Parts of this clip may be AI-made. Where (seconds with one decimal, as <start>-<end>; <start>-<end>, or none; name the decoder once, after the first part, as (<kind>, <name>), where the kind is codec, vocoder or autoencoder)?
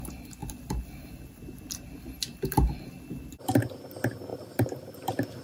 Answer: 4.3-5.4 (vocoder, BigVGAN v2)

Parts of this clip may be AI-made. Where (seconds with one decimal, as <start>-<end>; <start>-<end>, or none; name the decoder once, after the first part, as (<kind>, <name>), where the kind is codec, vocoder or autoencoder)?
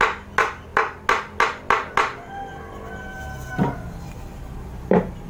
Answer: none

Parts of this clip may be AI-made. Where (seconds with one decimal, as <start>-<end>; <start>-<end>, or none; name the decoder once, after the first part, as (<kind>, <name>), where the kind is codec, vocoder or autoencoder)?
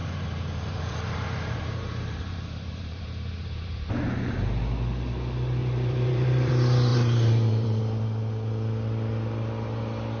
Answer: 0.0-3.9 (vocoder, BigVGAN v2); 5.6-6.5; 6.9-7.8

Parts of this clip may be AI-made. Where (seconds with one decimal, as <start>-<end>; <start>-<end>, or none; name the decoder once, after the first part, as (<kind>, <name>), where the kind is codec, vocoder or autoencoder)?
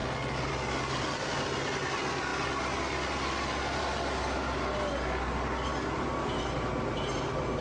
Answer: none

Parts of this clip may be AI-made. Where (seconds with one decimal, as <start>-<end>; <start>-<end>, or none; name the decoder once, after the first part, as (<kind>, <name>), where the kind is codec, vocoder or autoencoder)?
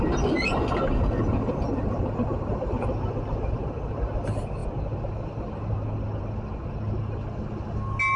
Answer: 1.7-2.5 (vocoder, BigVGAN v2)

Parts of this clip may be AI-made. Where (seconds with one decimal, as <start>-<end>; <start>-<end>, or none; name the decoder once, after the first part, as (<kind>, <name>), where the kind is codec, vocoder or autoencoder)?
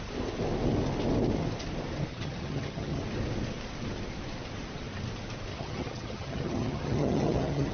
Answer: 2.1-3.0 (vocoder, HiFi-GAN); 5.5-7.7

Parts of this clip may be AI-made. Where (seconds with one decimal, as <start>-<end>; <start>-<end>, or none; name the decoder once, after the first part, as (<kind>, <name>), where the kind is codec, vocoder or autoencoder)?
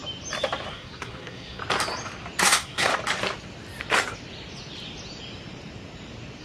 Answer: 0.7-1.6 (codec, SNAC); 2.4-2.9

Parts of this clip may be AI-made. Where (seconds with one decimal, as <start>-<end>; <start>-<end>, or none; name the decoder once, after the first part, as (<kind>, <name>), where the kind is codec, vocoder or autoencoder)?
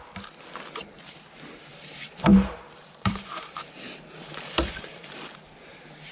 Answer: 1.7-5.2 (vocoder, BigVGAN v2)